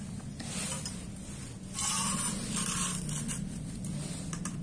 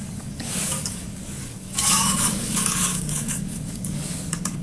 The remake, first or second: second